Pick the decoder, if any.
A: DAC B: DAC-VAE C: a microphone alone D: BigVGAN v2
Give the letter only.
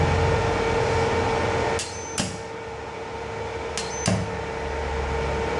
C